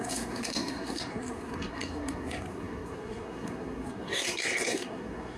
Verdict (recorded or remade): remade